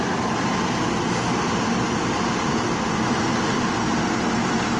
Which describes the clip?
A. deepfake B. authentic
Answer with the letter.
B